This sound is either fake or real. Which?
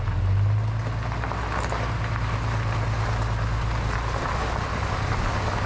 real